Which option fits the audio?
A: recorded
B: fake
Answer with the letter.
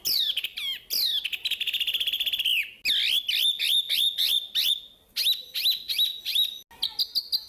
A